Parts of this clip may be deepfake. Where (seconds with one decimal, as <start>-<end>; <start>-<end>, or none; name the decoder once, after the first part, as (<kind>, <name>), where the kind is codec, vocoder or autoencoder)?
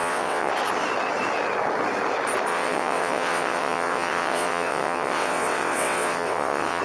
0.0-0.5 (vocoder, WaveNeXt); 2.5-6.8